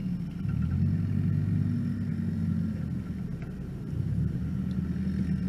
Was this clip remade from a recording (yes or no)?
no